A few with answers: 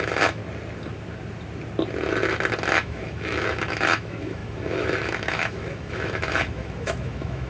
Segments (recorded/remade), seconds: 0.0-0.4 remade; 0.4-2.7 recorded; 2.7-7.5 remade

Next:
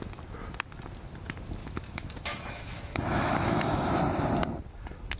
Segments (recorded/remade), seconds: 0.0-1.6 recorded; 1.6-3.9 remade; 3.9-5.2 recorded

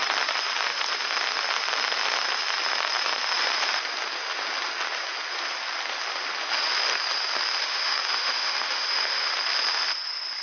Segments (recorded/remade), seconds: 0.0-7.6 recorded; 7.6-9.3 remade; 9.3-10.4 recorded

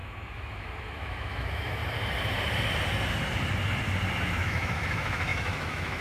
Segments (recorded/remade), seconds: 0.0-1.8 remade; 1.8-4.2 recorded; 4.2-6.0 remade

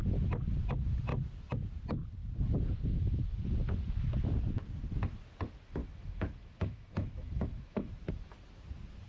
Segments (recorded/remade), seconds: 0.0-5.8 recorded; 5.8-7.9 remade; 7.9-9.1 recorded

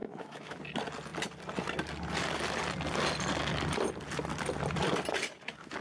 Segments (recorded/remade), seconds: 0.0-0.6 remade; 0.6-5.8 recorded

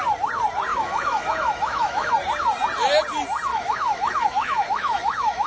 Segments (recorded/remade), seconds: 0.0-0.7 recorded; 0.7-2.1 remade; 2.1-3.5 recorded; 3.5-5.5 remade